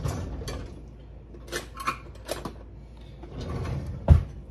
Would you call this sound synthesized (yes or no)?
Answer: no